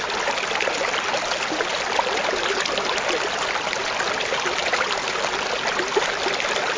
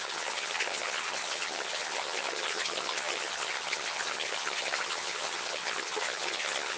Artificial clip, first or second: second